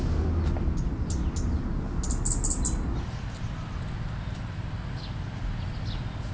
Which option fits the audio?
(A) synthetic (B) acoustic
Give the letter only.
B